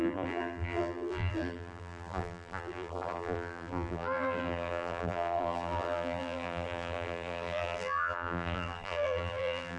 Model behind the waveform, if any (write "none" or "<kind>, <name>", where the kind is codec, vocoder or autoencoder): vocoder, BigVGAN v2